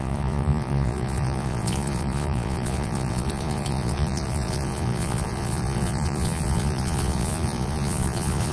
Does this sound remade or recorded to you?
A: remade